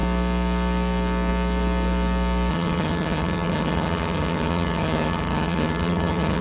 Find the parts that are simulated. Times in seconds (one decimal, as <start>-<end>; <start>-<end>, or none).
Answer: 2.5-6.4